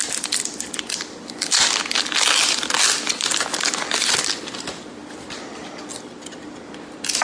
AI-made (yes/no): no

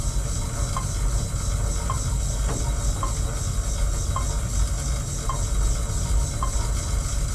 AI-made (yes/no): no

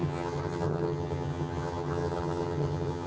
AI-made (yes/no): yes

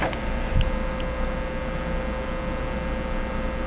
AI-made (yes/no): no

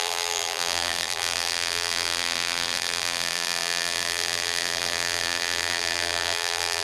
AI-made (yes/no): yes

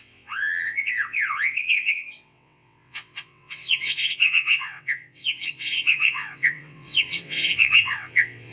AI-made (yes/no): yes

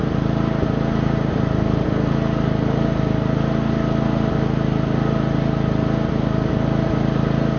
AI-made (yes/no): no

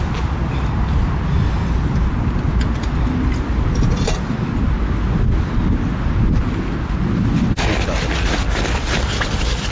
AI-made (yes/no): no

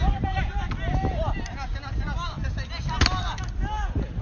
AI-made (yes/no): no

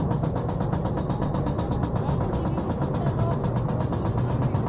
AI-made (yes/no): no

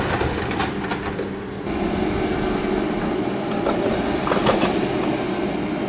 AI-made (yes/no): no